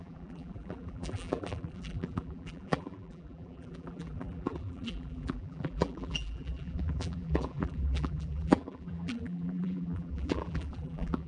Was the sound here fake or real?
fake